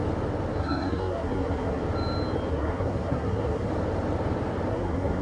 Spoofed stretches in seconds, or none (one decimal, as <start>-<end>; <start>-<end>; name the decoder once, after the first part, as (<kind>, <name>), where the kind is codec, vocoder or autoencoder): 0.6-1.8 (codec, SNAC); 2.5-3.7; 4.7-5.2